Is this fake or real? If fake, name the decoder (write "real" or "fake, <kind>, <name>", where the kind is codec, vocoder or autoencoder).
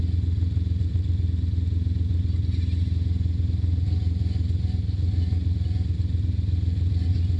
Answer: real